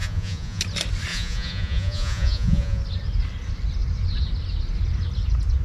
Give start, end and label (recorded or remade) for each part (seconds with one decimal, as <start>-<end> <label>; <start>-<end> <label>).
0.0-0.6 remade; 0.6-1.1 recorded; 1.1-2.8 remade; 2.8-5.6 recorded